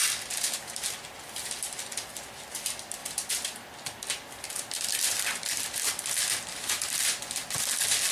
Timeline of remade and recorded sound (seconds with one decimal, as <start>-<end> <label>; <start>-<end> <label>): 0.0-8.1 recorded